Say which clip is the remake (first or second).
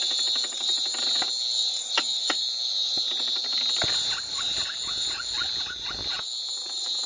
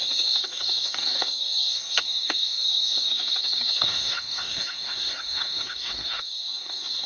second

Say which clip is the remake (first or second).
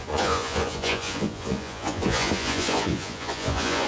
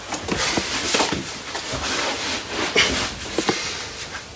first